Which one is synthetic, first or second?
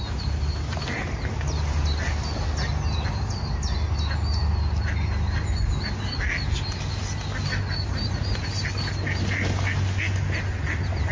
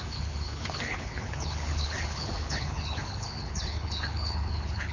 second